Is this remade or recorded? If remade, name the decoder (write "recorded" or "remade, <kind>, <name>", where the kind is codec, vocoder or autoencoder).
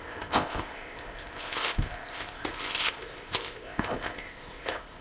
remade, codec, ZipCodec